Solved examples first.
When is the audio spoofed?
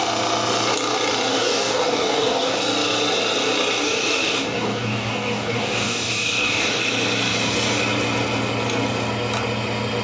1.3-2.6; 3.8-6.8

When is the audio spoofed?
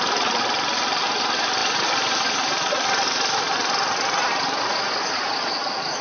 none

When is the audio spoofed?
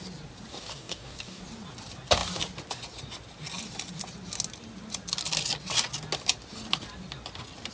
0.5-1.4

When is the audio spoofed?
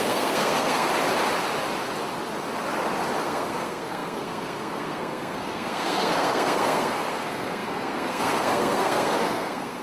0.0-0.9; 3.2-9.8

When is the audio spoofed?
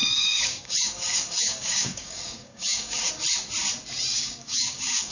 0.0-3.1; 4.1-5.1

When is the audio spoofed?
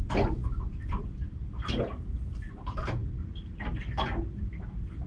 none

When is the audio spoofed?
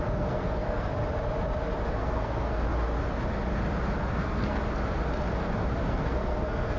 0.0-0.9; 1.9-2.7; 4.1-4.6; 5.8-6.8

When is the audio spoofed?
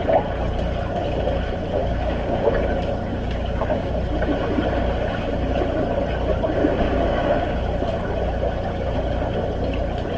1.8-2.5; 3.1-3.9; 6.6-7.6